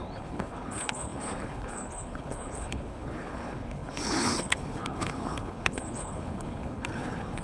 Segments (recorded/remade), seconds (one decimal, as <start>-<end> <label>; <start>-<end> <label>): 0.0-7.4 remade